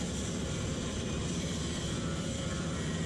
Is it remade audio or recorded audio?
remade